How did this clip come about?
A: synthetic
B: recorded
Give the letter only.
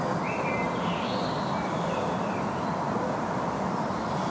B